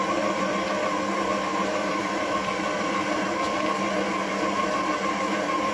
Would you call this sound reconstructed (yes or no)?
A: yes